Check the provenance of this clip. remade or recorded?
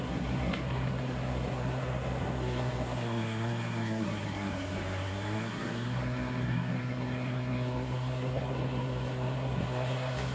remade